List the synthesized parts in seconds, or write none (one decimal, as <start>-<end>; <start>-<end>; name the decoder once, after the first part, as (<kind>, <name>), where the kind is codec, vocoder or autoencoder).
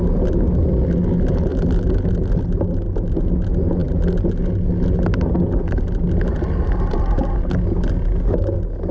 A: none